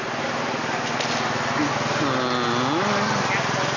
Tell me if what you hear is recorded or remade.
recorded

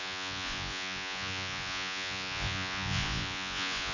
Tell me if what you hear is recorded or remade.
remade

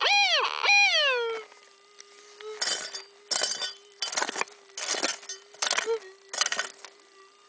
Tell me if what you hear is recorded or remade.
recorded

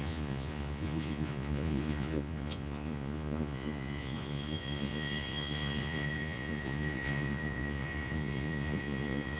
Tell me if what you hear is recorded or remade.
remade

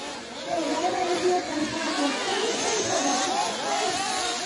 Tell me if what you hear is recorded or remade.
remade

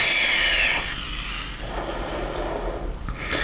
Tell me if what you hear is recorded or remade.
recorded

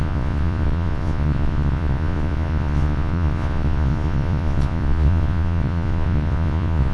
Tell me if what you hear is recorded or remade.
remade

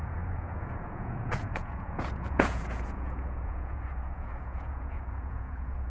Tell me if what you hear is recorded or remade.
remade